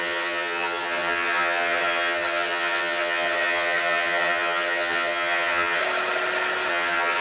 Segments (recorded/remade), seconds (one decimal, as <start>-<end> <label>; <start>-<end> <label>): 0.0-5.8 remade; 5.8-6.7 recorded; 6.7-7.2 remade